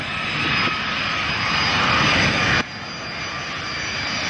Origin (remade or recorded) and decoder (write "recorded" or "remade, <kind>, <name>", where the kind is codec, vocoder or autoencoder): recorded